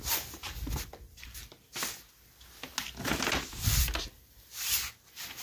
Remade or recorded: recorded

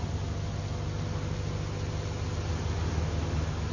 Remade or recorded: recorded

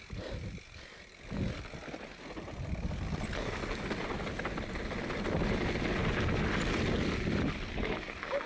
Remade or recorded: recorded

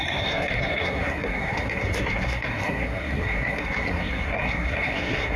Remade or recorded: remade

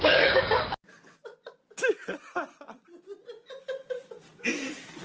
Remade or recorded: recorded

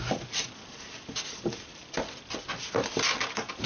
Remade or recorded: recorded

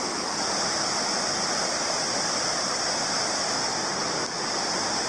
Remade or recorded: recorded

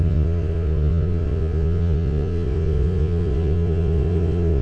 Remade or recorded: remade